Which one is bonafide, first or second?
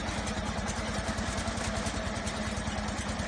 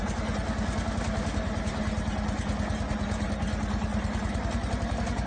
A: second